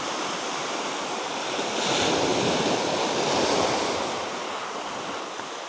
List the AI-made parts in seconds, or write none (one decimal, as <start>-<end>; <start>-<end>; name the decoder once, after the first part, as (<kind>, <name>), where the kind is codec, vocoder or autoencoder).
none